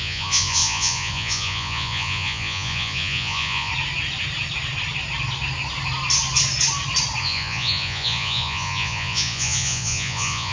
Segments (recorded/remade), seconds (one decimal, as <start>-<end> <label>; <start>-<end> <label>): 0.0-3.7 remade; 3.7-7.2 recorded; 7.2-10.5 remade